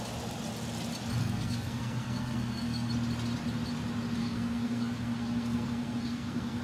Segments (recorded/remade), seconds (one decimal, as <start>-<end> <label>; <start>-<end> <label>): 0.0-1.2 recorded; 1.2-2.9 remade; 2.9-4.2 recorded; 4.2-6.6 remade